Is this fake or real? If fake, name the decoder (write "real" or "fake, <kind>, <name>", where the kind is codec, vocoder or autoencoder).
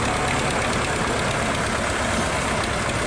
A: real